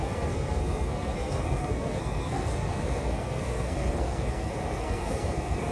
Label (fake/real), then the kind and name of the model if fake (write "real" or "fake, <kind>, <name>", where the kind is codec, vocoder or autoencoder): fake, codec, SNAC